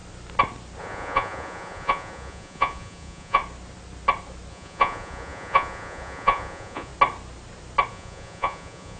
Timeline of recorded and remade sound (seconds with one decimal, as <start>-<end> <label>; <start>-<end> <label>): 0.0-0.8 recorded; 0.8-3.4 remade; 3.4-4.5 recorded; 4.5-6.9 remade; 6.9-7.9 recorded; 7.9-9.0 remade